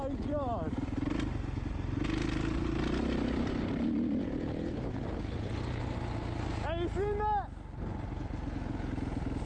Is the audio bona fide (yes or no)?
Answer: yes